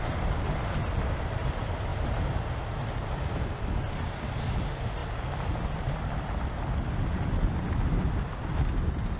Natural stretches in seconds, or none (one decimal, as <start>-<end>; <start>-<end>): 0.0-9.2